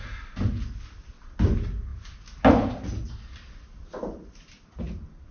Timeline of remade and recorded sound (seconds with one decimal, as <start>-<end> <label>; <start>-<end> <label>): 0.0-5.3 recorded